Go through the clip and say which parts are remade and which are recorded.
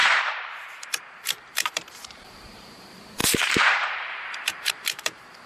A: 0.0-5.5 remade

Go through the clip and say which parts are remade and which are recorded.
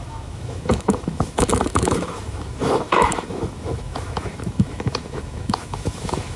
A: 0.0-6.4 remade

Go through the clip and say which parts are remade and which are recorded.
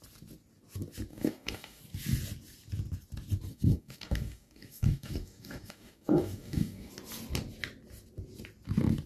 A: 0.0-1.1 recorded; 1.1-1.8 remade; 1.8-3.5 recorded; 3.5-6.9 remade; 6.9-9.1 recorded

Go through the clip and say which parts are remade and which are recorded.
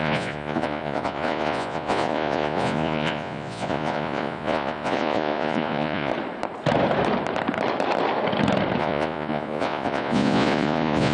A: 0.0-6.1 remade; 6.1-8.8 recorded; 8.8-11.1 remade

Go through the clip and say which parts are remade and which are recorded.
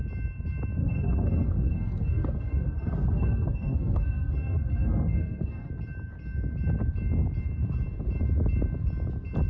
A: 0.0-0.8 recorded; 0.8-5.7 remade; 5.7-9.5 recorded